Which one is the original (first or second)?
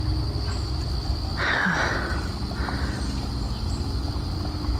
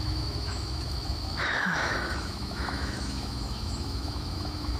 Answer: first